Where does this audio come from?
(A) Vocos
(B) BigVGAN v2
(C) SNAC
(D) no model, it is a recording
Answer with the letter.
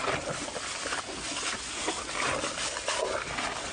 D